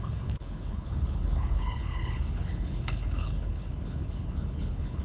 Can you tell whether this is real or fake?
fake